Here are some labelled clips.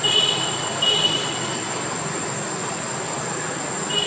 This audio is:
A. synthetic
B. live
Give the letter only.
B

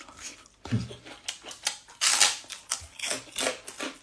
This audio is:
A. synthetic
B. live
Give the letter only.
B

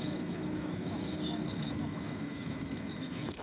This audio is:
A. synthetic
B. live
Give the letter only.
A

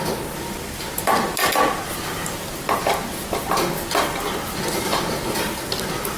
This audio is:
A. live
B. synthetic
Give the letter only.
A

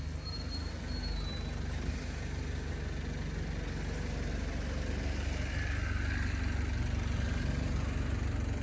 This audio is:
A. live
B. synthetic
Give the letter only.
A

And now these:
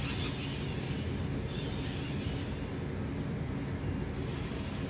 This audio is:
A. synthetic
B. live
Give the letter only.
B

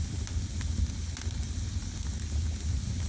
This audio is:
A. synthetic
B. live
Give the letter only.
B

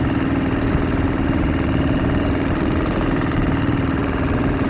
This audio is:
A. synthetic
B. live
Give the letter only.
A